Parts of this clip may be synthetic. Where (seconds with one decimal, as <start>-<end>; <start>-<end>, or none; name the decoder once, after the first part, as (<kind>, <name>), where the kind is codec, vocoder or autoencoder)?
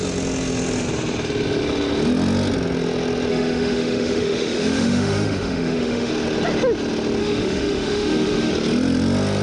3.3-6.1 (autoencoder, DAC-VAE); 7.2-8.5